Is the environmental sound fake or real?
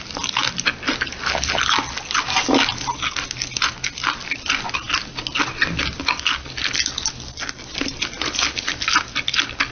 real